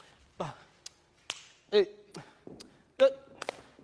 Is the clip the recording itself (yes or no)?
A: yes